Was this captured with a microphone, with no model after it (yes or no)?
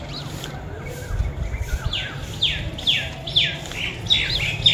yes